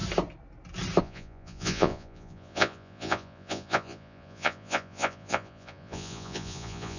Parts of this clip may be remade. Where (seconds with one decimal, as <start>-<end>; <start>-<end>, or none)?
1.0-7.0